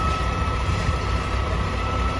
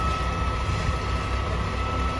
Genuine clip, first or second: second